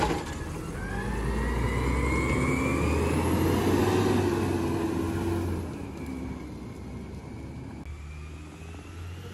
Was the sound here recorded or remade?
recorded